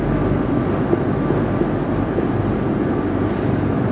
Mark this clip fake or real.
real